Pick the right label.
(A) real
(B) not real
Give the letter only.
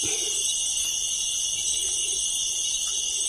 A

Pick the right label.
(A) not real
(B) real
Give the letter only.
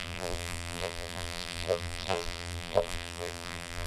A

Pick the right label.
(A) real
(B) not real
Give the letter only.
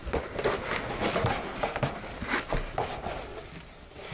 A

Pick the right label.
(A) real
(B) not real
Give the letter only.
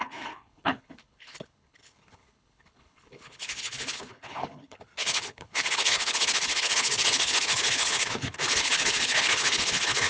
B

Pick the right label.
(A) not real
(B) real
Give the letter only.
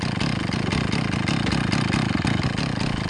B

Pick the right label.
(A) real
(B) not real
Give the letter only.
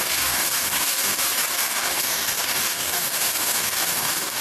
B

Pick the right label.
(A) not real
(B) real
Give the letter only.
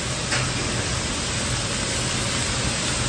B